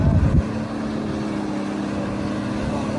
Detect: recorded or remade recorded